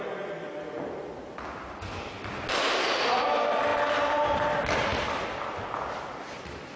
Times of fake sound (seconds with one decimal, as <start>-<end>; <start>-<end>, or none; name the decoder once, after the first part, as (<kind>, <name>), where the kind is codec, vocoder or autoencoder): none